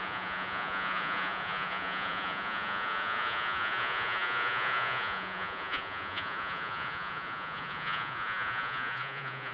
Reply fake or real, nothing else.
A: fake